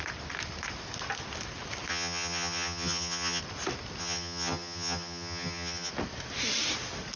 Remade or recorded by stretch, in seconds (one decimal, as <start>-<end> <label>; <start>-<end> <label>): 0.0-1.9 recorded; 1.9-3.4 remade; 3.4-4.0 recorded; 4.0-5.9 remade; 5.9-7.2 recorded